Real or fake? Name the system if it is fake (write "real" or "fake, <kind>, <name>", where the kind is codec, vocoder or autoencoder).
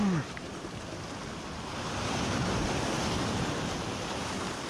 real